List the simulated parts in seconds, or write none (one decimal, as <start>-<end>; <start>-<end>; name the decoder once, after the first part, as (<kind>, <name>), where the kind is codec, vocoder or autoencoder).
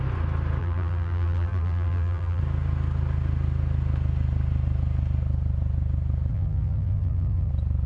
0.6-2.4 (vocoder, BigVGAN v2); 6.3-7.5